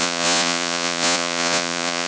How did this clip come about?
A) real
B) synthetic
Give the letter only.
B